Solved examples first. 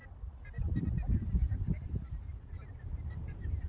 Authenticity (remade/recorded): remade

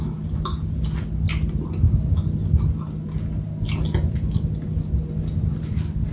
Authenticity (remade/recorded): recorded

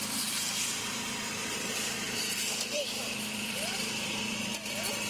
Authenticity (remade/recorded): remade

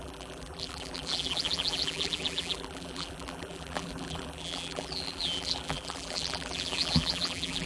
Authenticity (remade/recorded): remade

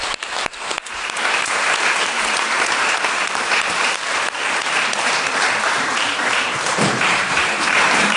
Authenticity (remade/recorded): remade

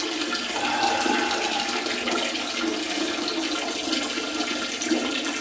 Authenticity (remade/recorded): recorded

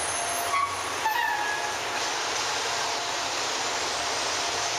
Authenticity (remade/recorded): recorded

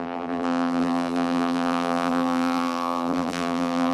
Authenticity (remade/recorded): remade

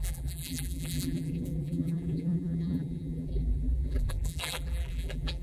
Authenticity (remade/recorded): remade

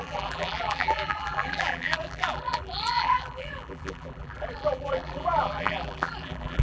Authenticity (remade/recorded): remade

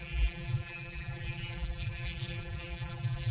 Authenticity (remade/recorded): remade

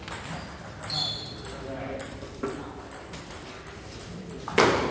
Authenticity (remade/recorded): remade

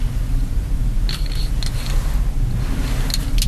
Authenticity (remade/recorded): recorded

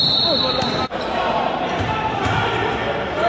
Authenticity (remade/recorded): remade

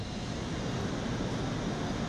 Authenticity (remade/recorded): recorded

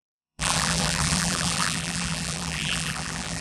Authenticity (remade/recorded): remade